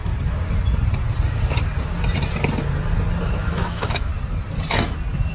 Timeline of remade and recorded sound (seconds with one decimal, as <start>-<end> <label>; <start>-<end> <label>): 0.0-3.2 recorded; 3.2-4.1 remade; 4.1-5.3 recorded